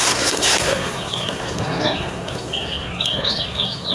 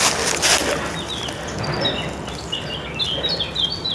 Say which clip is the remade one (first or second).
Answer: first